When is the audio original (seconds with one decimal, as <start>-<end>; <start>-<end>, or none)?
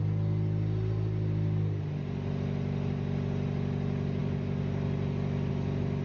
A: 0.0-6.0